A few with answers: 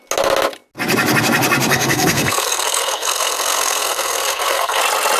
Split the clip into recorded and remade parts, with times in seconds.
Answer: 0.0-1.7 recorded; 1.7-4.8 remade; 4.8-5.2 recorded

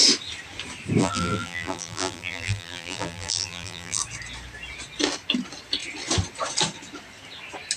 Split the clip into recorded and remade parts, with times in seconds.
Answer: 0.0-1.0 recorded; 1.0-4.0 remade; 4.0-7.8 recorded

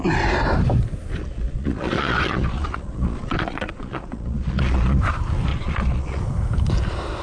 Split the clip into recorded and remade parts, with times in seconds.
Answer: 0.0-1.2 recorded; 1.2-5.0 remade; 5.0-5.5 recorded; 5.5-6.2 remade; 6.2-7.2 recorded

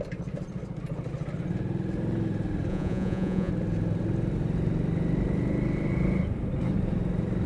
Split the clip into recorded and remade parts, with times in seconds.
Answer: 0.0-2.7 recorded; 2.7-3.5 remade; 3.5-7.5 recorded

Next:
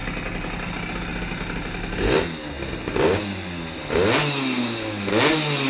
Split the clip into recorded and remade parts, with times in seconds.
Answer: 0.0-5.7 recorded

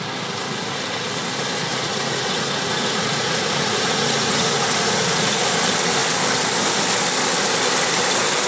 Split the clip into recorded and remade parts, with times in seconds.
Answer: 0.0-1.7 recorded; 1.7-5.4 remade; 5.4-8.5 recorded

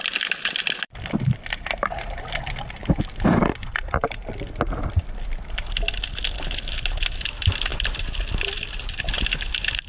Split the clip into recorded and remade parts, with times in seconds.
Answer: 0.0-9.9 recorded